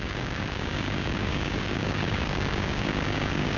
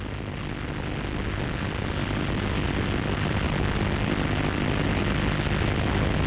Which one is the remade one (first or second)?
first